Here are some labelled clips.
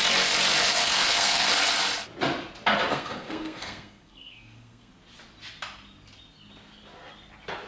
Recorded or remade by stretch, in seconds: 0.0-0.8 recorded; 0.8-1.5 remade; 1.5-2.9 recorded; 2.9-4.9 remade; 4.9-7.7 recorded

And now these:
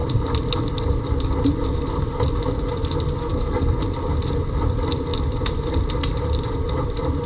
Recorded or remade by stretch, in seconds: 0.0-3.2 recorded; 3.2-3.8 remade; 3.8-7.3 recorded

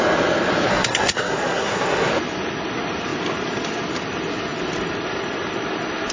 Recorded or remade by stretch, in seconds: 0.0-0.7 recorded; 0.7-2.1 remade; 2.1-6.1 recorded

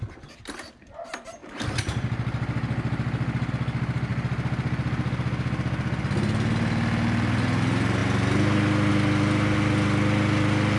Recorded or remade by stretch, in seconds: 0.0-10.8 recorded

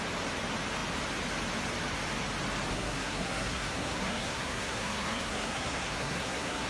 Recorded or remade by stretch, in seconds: 0.0-2.7 recorded; 2.7-6.7 remade

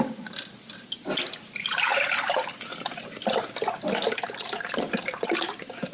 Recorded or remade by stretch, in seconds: 0.0-5.9 recorded

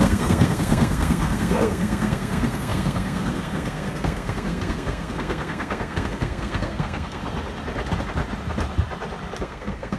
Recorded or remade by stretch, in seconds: 0.0-7.2 remade; 7.2-9.4 recorded; 9.4-10.0 remade

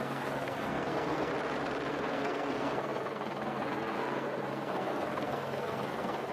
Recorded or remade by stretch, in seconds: 0.0-1.3 remade; 1.3-1.9 recorded; 1.9-6.3 remade